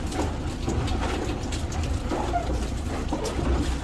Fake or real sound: real